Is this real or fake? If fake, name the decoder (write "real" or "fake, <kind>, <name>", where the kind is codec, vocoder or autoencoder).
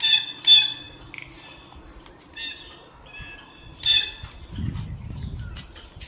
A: real